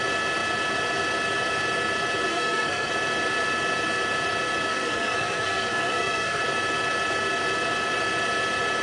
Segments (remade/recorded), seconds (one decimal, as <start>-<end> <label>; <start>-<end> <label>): 0.0-2.3 recorded; 2.3-2.9 remade; 2.9-4.7 recorded; 4.7-6.4 remade; 6.4-8.8 recorded